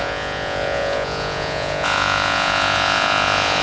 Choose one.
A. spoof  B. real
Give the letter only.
A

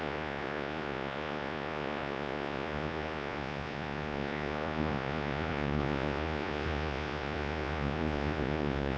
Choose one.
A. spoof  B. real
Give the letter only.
A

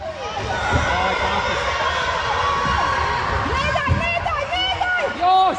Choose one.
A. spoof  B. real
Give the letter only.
B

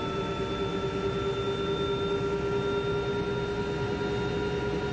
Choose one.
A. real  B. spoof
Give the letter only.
A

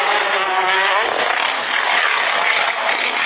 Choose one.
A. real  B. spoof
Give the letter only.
A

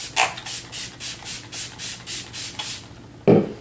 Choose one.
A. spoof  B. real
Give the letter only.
B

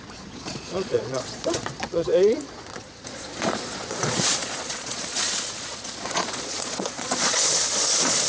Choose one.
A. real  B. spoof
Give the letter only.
B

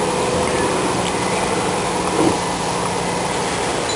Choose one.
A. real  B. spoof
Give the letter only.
A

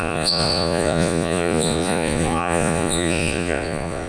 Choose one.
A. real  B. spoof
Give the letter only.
B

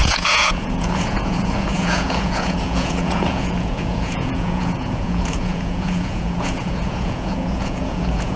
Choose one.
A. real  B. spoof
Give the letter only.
B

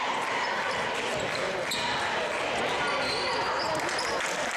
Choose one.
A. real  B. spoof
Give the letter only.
A